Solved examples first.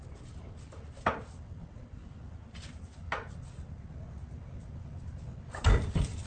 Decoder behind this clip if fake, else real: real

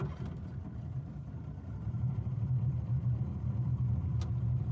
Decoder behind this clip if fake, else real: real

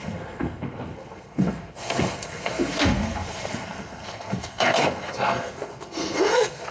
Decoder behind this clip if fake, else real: fake, codec, SNAC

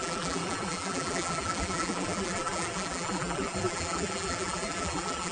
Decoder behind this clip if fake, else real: fake, vocoder, BigVGAN v2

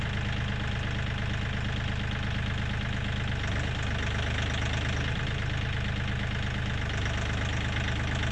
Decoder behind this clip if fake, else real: real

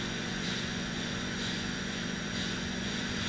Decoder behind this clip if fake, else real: fake, vocoder, Vocos